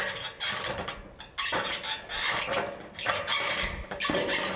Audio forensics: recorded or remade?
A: recorded